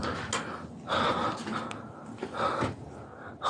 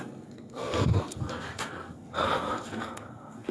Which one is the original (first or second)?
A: first